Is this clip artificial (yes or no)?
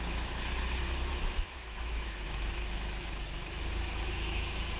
yes